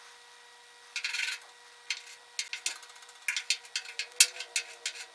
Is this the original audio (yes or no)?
yes